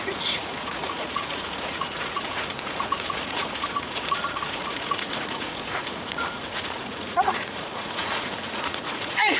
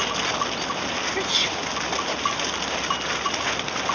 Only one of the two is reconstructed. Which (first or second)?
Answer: first